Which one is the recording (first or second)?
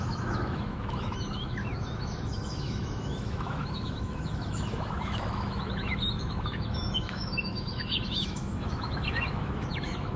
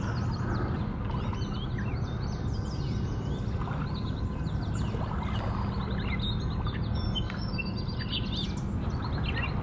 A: second